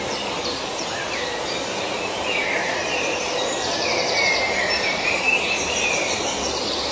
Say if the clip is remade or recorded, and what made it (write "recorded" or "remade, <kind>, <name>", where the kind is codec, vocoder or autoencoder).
remade, vocoder, BigVGAN v2